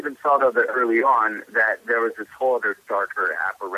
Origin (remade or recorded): recorded